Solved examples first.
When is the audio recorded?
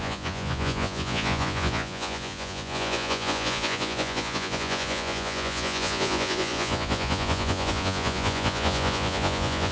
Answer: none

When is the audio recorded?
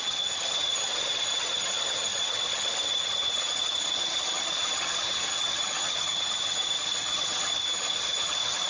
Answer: none